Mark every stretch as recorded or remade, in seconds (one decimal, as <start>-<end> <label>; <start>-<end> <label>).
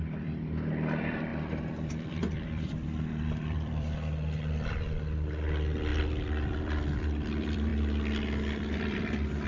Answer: 0.0-7.7 remade; 7.7-8.6 recorded; 8.6-9.5 remade